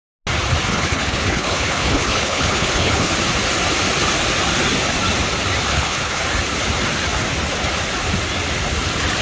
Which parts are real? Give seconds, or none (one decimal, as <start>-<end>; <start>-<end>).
0.0-0.7; 3.1-5.7; 6.2-9.2